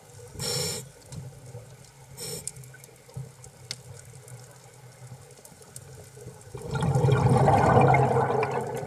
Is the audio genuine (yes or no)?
yes